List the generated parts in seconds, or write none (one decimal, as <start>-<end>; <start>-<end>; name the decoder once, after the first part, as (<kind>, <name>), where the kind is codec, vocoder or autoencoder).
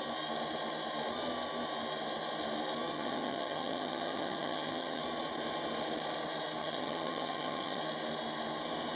2.9-5.0 (vocoder, HiFi-GAN); 6.6-7.8